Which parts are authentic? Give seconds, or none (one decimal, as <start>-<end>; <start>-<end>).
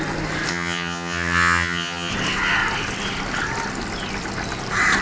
0.0-0.5; 2.1-5.0